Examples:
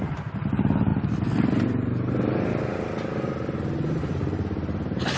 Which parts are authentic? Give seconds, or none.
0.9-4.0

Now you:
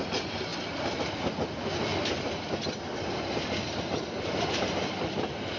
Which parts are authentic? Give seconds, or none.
0.0-5.6